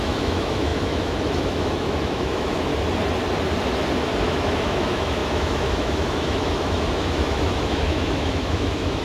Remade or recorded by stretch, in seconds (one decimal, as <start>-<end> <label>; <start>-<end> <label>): 0.0-2.7 remade; 2.7-4.2 recorded; 4.2-9.0 remade

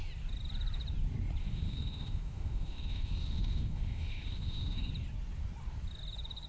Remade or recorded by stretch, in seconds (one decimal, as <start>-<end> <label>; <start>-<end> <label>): 0.0-1.4 recorded; 1.4-4.9 remade; 4.9-6.5 recorded

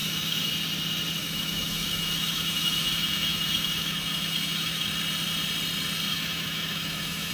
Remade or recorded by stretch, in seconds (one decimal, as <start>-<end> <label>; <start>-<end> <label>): 0.0-0.5 remade; 0.5-1.2 recorded; 1.2-4.9 remade; 4.9-6.1 recorded; 6.1-7.3 remade

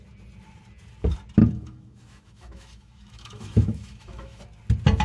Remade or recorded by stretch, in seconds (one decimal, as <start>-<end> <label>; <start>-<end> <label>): 0.0-1.4 recorded; 1.4-4.4 remade; 4.4-5.0 recorded

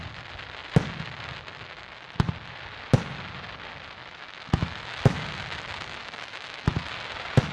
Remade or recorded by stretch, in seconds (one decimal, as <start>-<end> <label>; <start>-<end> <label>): 0.0-4.0 recorded; 4.0-5.2 remade; 5.2-6.0 recorded; 6.0-6.9 remade; 6.9-7.5 recorded

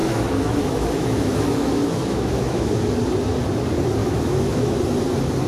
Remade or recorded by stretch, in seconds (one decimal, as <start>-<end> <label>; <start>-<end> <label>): 0.0-2.7 remade; 2.7-4.0 recorded; 4.0-4.8 remade; 4.8-5.5 recorded

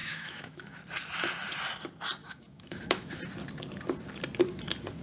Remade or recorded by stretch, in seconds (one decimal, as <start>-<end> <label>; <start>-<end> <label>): 0.0-0.8 remade; 0.8-2.2 recorded; 2.2-3.2 remade; 3.2-5.0 recorded

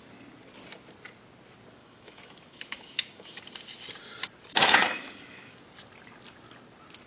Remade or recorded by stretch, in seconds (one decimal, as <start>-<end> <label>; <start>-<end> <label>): 0.0-1.8 recorded; 1.8-3.4 remade; 3.4-4.6 recorded; 4.6-5.6 remade; 5.6-7.1 recorded